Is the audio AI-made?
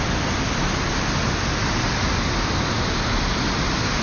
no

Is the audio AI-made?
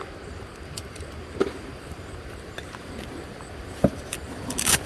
yes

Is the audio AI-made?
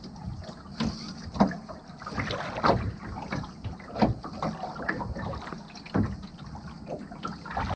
no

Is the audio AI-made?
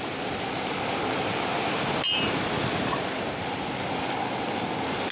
no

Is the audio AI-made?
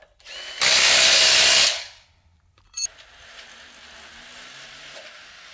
no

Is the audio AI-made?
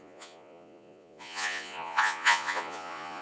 yes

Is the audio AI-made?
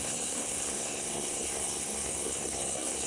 yes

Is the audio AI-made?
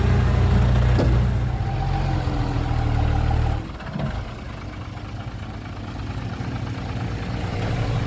no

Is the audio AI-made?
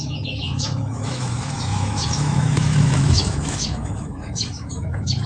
yes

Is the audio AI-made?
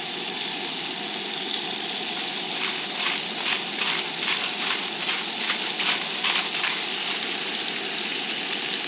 no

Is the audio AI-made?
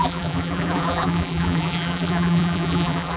yes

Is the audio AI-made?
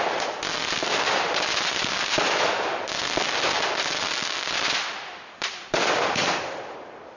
yes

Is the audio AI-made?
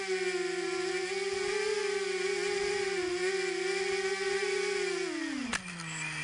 no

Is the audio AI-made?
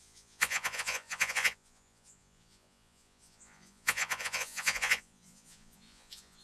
yes